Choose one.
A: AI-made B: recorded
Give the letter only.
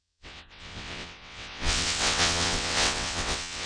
A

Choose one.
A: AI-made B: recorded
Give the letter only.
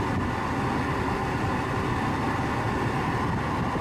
B